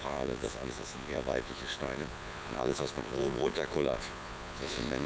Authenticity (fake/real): fake